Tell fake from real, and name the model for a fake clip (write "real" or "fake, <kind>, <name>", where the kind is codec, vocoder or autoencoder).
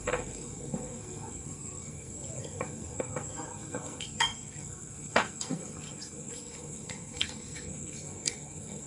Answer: fake, codec, SNAC